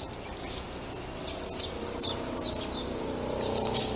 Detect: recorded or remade recorded